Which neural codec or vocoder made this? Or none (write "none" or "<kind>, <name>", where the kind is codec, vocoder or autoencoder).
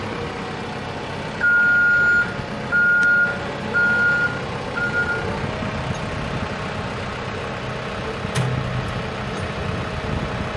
none